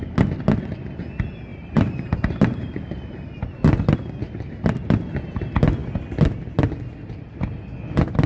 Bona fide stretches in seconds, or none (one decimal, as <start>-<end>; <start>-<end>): 0.0-1.5; 3.4-4.2; 5.1-8.3